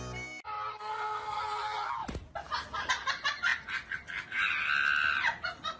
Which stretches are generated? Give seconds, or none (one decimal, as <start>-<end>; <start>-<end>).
0.7-1.4